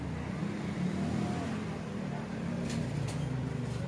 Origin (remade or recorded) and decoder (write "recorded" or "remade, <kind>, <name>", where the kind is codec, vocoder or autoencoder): remade, vocoder, BigVGAN v2